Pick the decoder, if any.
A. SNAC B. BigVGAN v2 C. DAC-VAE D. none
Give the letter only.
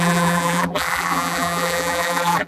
B